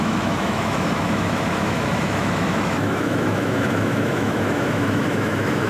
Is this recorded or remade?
remade